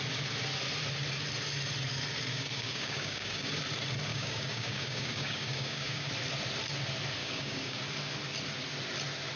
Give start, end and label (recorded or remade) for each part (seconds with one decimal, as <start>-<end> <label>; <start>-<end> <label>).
0.0-2.3 recorded; 2.3-3.5 remade; 3.5-4.1 recorded; 4.1-6.1 remade; 6.1-7.2 recorded; 7.2-7.8 remade; 7.8-9.4 recorded